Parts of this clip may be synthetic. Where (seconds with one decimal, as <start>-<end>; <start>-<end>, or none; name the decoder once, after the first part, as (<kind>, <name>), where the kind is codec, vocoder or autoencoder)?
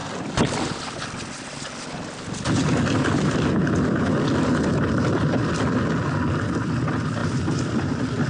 none